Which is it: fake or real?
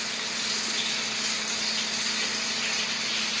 real